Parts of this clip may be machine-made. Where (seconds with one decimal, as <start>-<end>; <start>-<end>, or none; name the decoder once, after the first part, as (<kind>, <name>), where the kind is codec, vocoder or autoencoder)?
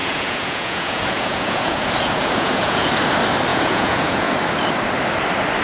0.0-2.9 (vocoder, Vocos); 3.5-4.3